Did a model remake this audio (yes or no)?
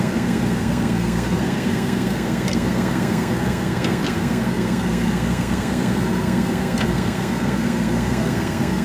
yes